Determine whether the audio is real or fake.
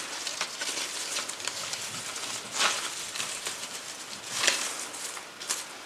real